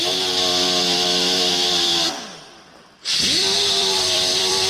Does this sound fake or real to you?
fake